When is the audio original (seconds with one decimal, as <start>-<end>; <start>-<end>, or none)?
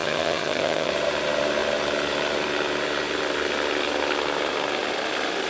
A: 0.9-5.5